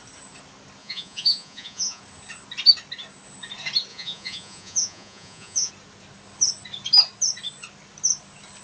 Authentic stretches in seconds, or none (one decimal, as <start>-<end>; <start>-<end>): 0.0-0.8; 2.0-3.9; 5.7-8.6